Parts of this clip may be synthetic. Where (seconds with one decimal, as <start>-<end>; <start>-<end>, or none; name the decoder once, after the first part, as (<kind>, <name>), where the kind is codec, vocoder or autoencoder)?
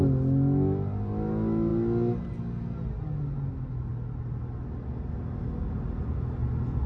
none